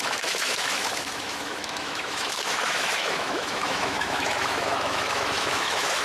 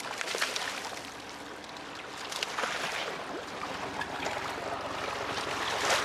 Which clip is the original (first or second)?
second